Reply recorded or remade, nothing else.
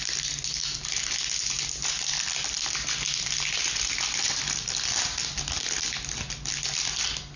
recorded